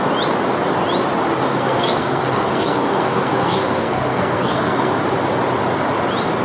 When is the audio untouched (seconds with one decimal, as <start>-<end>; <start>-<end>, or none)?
0.0-1.5; 4.9-6.4